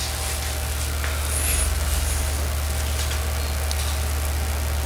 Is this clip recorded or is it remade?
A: recorded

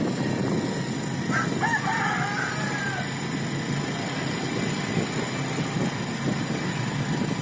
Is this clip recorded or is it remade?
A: recorded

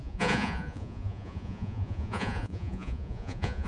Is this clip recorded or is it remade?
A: remade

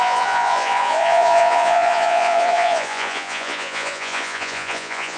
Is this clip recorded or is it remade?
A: remade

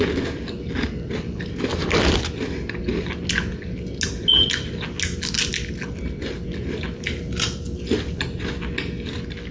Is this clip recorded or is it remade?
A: recorded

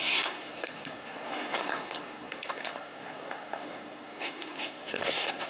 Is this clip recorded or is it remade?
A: remade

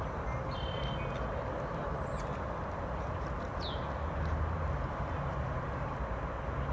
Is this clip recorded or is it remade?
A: recorded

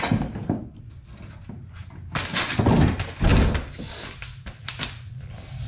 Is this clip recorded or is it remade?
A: recorded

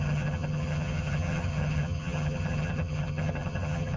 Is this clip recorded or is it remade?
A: remade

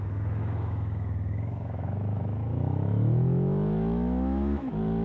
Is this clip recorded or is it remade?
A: remade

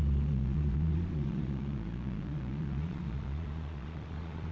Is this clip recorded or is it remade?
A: remade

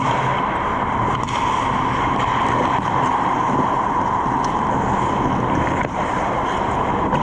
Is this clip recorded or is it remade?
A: recorded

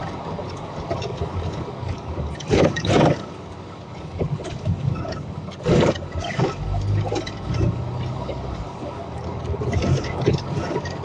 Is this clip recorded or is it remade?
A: remade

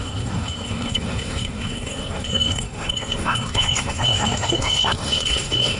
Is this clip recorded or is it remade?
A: remade